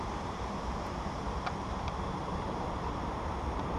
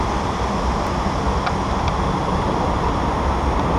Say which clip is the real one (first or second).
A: second